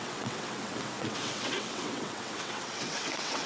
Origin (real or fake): fake